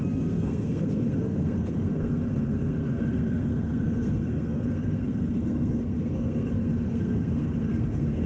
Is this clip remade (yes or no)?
yes